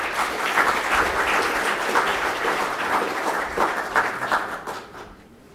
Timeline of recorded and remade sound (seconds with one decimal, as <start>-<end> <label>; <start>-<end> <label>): 0.0-2.1 recorded; 2.1-5.5 remade